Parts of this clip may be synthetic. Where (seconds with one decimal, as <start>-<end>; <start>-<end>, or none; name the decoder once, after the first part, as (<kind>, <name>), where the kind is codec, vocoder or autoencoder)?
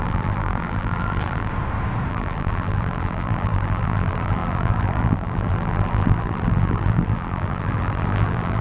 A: 0.0-1.5 (vocoder, BigVGAN v2); 2.1-8.6